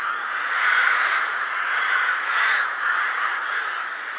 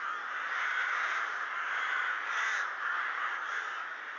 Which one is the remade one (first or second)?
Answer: first